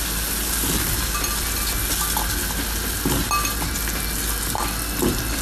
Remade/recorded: recorded